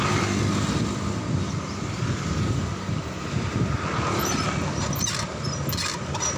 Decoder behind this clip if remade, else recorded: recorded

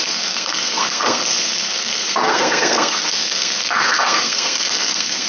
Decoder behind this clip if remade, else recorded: remade, codec, SNAC